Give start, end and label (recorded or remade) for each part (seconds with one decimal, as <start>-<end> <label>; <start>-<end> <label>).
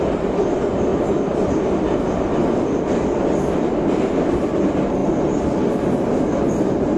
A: 0.0-7.0 recorded